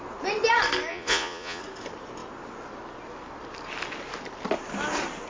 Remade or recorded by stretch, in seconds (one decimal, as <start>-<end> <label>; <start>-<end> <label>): 0.0-0.9 recorded; 0.9-1.6 remade; 1.6-5.3 recorded